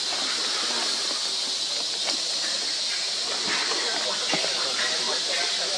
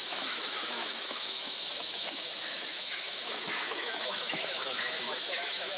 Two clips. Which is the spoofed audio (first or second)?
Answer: second